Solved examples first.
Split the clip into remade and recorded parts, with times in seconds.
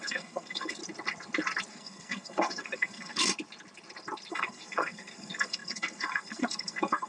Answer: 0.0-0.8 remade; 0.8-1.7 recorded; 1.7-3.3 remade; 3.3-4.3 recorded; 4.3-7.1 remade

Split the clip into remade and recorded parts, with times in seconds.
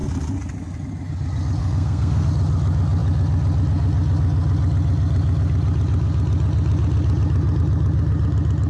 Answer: 0.0-1.6 recorded; 1.6-2.3 remade; 2.3-8.7 recorded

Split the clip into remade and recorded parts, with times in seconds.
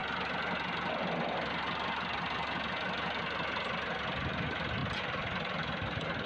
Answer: 0.0-6.3 recorded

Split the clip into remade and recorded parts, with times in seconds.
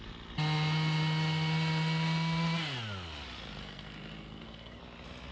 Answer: 0.0-3.6 recorded; 3.6-4.8 remade; 4.8-5.3 recorded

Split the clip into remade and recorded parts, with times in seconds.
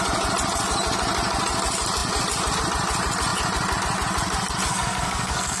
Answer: 0.0-4.7 recorded; 4.7-5.6 remade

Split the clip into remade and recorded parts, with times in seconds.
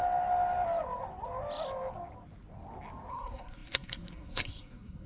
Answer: 0.0-3.1 recorded; 3.1-5.1 remade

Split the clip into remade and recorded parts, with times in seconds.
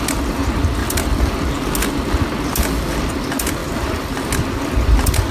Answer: 0.0-5.3 recorded